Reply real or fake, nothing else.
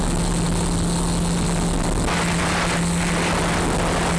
real